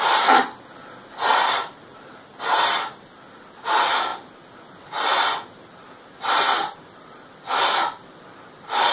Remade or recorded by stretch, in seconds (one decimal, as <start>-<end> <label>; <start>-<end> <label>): 0.0-8.9 recorded